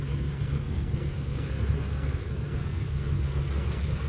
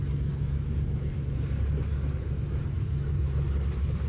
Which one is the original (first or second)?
second